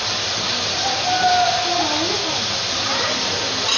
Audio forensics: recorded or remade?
recorded